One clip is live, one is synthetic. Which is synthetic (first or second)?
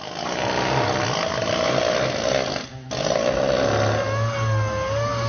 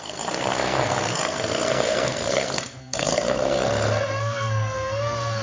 second